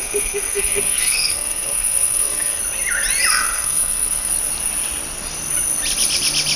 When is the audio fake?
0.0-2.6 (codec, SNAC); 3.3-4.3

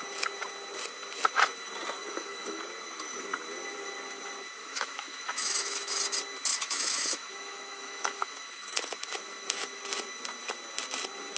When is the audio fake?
2.0-2.6 (autoencoder, DAC-VAE); 4.6-6.0; 6.5-9.8

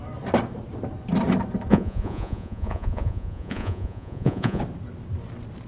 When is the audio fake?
1.7-4.6 (vocoder, Vocos)

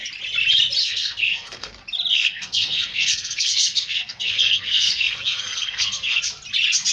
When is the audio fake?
0.8-1.7 (codec, SNAC); 2.1-6.2

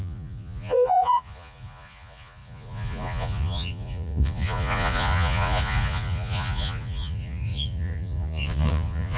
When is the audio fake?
0.0-9.2 (vocoder, Vocos)